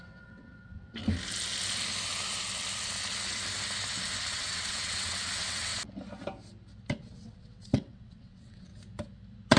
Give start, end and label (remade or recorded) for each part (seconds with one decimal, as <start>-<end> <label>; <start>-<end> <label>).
0.0-1.0 remade; 1.0-4.3 recorded; 4.3-5.7 remade; 5.7-7.0 recorded; 7.0-8.7 remade; 8.7-9.6 recorded